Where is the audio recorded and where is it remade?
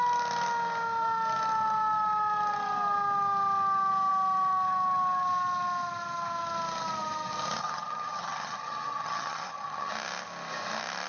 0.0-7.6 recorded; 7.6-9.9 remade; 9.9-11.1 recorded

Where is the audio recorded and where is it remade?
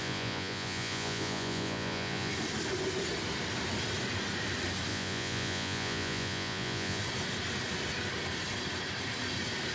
0.0-2.3 remade; 2.3-4.9 recorded; 4.9-7.0 remade; 7.0-9.7 recorded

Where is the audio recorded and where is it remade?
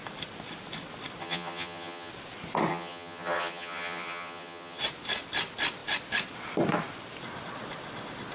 0.0-1.2 recorded; 1.2-2.1 remade; 2.1-2.7 recorded; 2.7-4.8 remade; 4.8-8.3 recorded